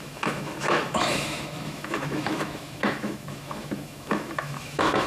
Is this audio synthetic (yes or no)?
yes